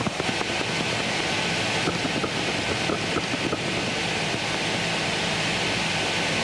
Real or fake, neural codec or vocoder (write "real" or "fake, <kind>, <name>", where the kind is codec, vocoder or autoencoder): real